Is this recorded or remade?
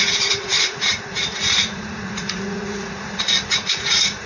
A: remade